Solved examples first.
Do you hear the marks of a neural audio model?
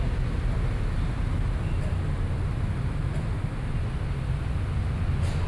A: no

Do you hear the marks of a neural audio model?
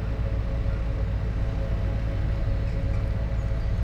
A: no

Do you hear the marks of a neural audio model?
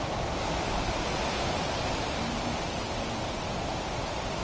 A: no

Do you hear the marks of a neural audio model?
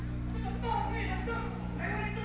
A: no